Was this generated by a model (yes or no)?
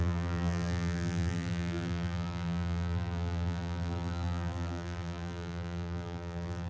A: yes